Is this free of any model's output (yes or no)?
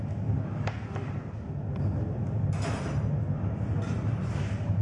yes